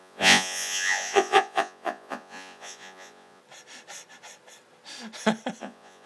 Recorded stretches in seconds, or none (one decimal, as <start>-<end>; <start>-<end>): 3.4-5.6